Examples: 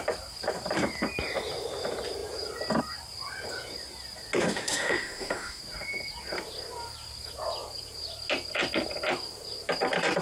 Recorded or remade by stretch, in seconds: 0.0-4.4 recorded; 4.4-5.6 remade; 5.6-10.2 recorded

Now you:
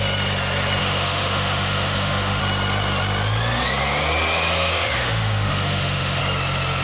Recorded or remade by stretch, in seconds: 0.0-0.8 recorded; 0.8-2.4 remade; 2.4-4.7 recorded; 4.7-6.2 remade; 6.2-6.8 recorded

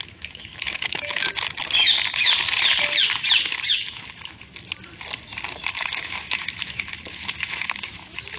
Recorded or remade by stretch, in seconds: 0.0-1.3 remade; 1.3-3.7 recorded; 3.7-4.5 remade; 4.5-5.7 recorded; 5.7-8.4 remade

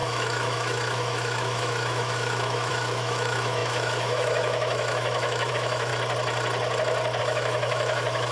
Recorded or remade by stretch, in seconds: 0.0-5.9 remade; 5.9-7.2 recorded; 7.2-8.3 remade

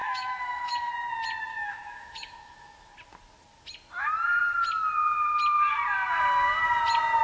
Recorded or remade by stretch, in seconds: 0.0-0.9 remade; 0.9-1.5 recorded; 1.5-2.9 remade; 2.9-7.2 recorded

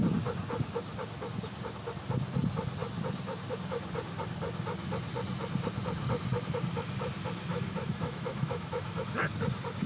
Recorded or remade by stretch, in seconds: 0.0-7.5 recorded; 7.5-9.0 remade; 9.0-9.9 recorded

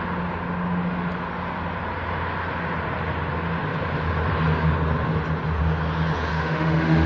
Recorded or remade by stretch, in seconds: 0.0-6.3 recorded; 6.3-7.1 remade

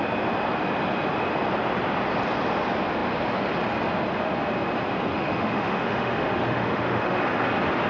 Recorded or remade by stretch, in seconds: 0.0-5.1 recorded; 5.1-7.2 remade; 7.2-7.9 recorded